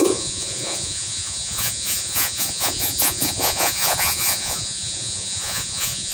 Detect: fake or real fake